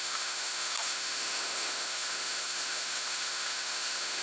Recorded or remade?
remade